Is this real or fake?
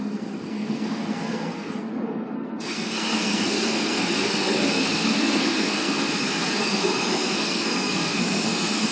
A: fake